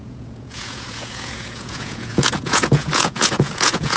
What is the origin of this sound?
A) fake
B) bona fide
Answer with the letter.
A